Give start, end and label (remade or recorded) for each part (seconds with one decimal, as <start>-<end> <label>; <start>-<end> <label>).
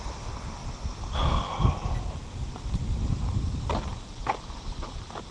0.0-5.3 recorded